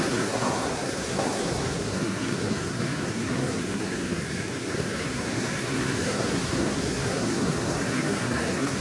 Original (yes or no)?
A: no